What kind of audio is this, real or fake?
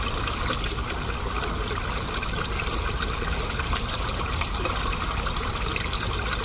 real